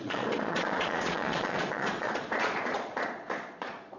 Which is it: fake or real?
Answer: fake